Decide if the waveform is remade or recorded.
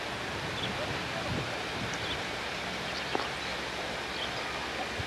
recorded